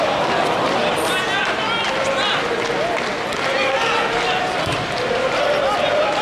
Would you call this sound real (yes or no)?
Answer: yes